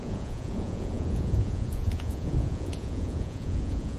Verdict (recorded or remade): remade